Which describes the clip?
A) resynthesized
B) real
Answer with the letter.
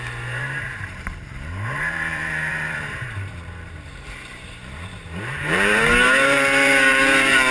A